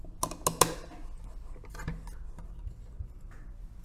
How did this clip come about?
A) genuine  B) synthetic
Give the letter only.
A